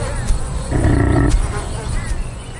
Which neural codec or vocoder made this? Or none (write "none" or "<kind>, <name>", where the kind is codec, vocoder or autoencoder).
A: vocoder, Vocos